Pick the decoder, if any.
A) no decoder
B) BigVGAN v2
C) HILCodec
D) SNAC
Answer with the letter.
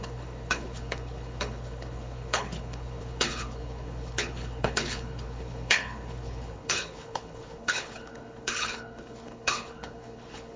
C